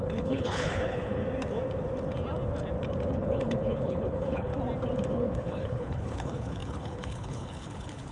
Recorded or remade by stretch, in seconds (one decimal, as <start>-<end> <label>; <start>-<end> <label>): 0.0-1.2 remade; 1.2-3.1 recorded; 3.1-4.5 remade; 4.5-5.1 recorded; 5.1-8.1 remade